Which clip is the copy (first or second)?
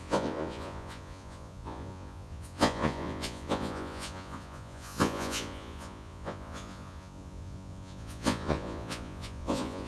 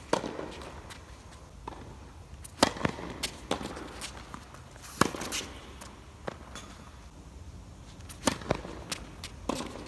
first